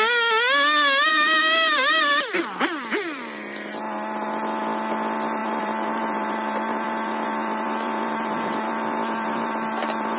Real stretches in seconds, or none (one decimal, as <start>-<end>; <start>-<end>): 0.0-1.1; 3.8-5.4